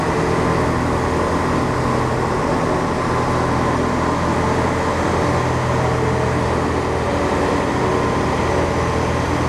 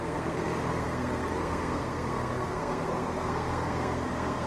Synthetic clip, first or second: second